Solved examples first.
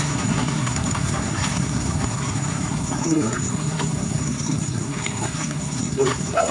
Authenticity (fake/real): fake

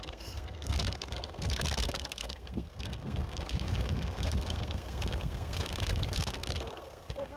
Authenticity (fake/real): fake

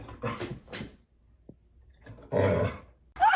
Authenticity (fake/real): real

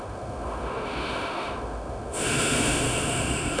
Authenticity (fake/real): fake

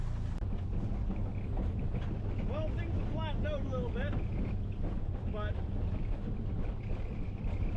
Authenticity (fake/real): real